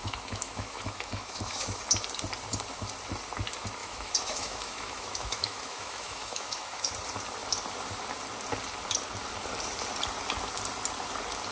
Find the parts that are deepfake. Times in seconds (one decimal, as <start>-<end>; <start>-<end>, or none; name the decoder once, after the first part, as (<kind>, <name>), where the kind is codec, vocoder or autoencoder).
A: 0.0-1.8 (autoencoder, DAC-VAE); 3.8-6.9